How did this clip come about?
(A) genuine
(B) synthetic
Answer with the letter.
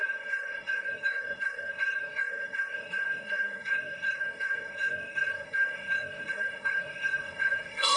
B